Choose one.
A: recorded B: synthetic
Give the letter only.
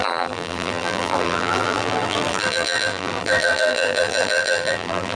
B